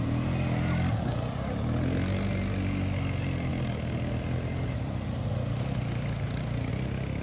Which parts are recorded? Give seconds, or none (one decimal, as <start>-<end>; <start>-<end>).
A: 0.0-7.2